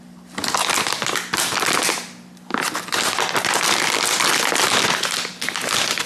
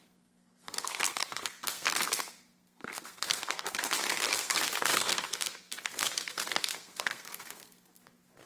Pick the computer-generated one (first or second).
second